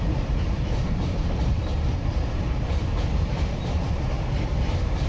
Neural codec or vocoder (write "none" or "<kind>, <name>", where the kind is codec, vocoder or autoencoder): vocoder, BigVGAN v2